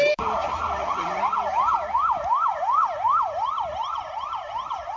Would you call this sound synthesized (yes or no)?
yes